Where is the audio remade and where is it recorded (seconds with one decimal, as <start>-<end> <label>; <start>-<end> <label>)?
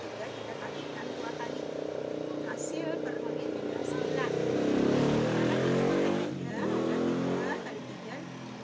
0.0-8.6 recorded